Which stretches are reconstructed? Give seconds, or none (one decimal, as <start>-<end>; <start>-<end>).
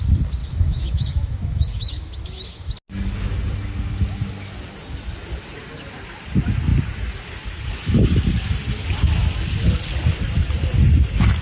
0.4-2.7